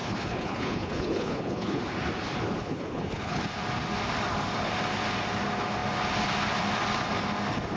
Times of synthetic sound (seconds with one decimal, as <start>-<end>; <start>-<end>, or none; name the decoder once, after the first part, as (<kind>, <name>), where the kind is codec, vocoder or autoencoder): 0.0-1.8 (codec, HILCodec); 2.6-3.4